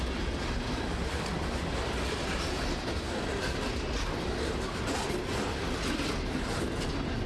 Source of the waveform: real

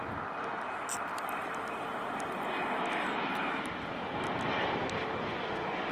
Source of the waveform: real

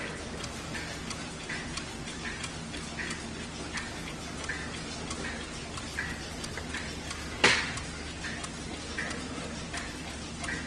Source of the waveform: real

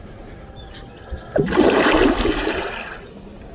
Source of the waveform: real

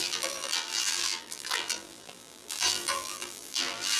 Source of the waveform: fake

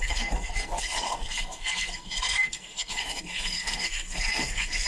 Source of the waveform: fake